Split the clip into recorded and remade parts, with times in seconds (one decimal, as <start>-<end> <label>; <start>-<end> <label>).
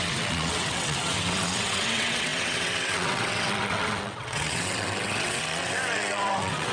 0.0-6.7 remade